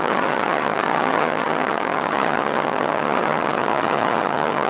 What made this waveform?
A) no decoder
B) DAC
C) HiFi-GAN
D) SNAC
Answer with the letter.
C